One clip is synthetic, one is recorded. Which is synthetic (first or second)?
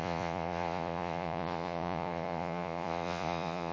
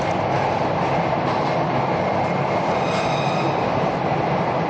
first